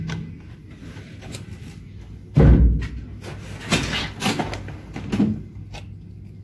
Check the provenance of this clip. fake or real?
real